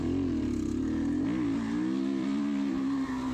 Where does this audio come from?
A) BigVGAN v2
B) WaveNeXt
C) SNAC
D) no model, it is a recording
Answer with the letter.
D